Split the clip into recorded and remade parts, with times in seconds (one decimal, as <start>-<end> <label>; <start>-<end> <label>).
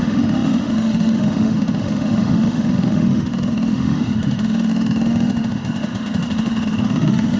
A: 0.0-7.4 remade